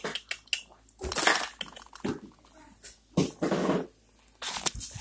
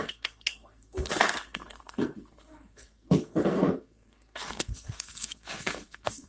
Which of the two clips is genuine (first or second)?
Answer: first